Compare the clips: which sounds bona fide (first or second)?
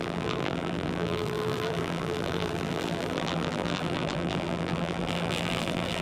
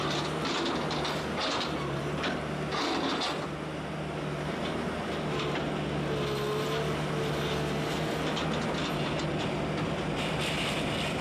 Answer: second